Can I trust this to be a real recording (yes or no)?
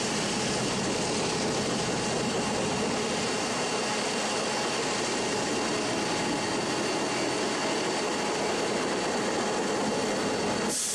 yes